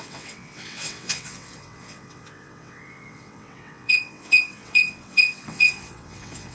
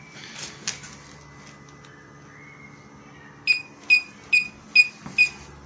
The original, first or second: second